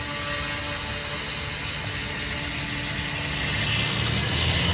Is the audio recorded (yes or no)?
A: yes